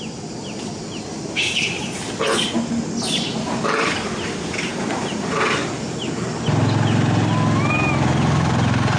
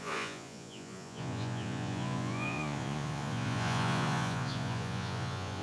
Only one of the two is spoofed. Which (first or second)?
second